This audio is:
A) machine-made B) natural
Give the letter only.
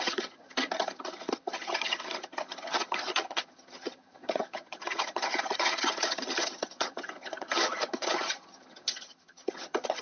A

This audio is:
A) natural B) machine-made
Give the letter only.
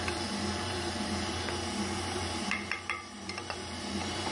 B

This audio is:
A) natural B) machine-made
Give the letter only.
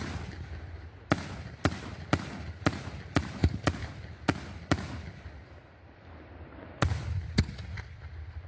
A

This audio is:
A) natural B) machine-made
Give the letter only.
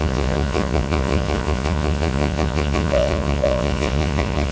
B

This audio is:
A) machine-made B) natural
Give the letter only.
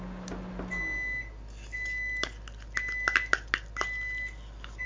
B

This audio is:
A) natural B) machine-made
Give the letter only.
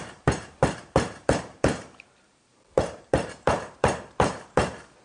B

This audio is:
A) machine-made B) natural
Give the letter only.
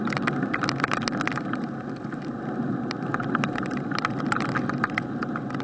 B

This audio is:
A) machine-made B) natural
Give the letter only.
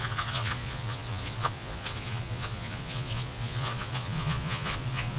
A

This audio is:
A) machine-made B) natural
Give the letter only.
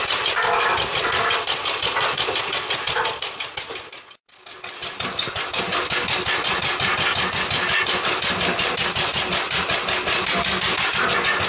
B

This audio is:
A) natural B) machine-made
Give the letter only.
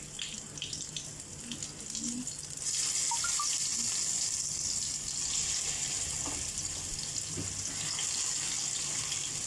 A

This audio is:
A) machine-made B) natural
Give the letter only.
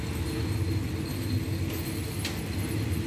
B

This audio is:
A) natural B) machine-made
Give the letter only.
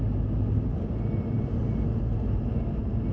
A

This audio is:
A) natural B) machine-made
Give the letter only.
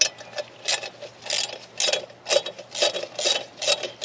A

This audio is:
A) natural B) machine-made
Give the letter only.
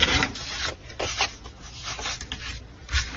A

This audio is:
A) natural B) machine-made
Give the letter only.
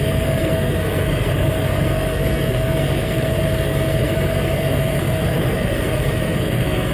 B